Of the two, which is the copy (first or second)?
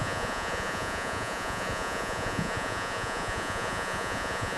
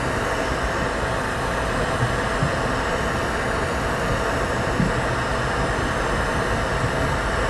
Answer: first